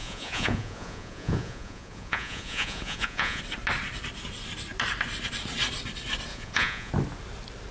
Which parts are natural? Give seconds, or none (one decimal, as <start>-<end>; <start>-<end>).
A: 3.4-6.3; 6.9-7.7